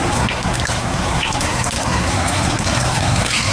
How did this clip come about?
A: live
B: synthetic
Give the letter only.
B